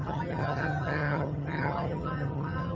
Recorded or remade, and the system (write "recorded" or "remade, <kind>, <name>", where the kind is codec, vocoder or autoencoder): remade, vocoder, HiFi-GAN